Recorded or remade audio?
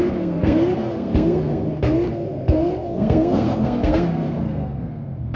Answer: remade